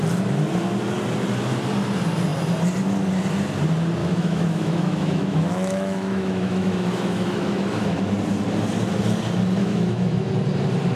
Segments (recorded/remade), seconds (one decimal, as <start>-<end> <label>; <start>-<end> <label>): 0.0-4.0 recorded; 4.0-8.0 remade; 8.0-9.6 recorded; 9.6-10.3 remade; 10.3-10.9 recorded